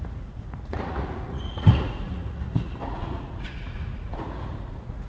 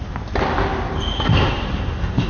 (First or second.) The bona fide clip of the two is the second